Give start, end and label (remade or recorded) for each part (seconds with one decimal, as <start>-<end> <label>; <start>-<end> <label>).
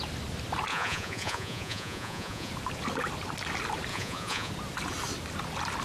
0.0-0.7 recorded; 0.7-2.5 remade; 2.5-3.9 recorded; 3.9-4.5 remade; 4.5-5.8 recorded